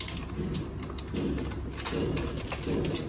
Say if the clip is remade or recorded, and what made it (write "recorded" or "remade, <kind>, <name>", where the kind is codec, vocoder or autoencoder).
recorded